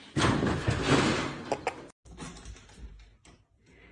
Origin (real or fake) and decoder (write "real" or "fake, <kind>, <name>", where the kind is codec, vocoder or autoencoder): real